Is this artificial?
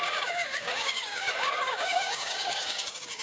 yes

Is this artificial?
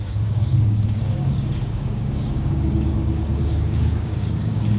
yes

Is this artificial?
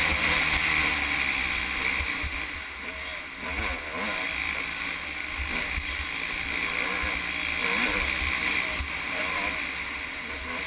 no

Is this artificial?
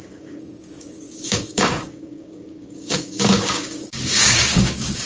yes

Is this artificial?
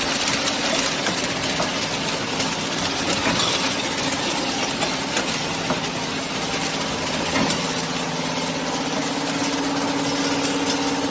no